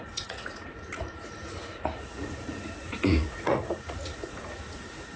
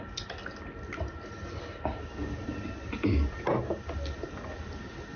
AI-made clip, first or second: first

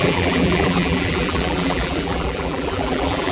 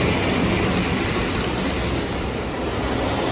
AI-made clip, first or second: first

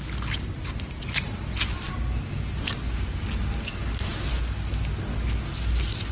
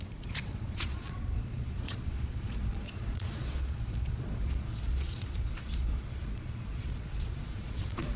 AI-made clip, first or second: second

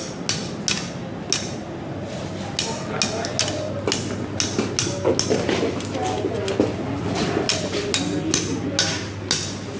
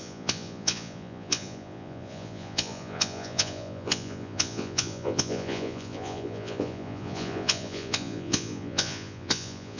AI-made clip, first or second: second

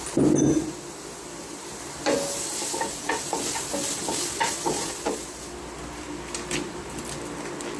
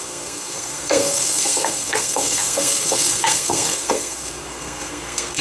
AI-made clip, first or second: second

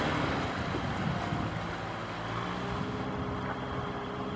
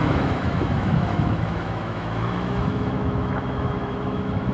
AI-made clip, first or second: second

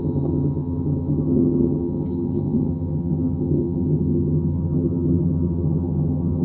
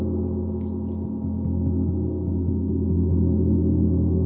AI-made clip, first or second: first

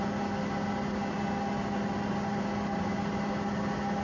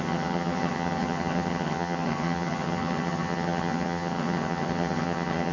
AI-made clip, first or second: second